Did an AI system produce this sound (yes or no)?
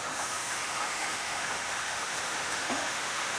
yes